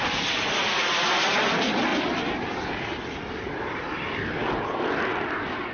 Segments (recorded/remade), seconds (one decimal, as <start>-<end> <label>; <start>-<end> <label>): 0.0-5.7 recorded